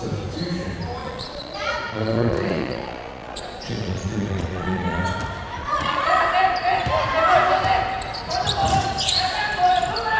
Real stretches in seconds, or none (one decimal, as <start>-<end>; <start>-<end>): 0.0-1.0; 5.0-5.6; 6.2-10.2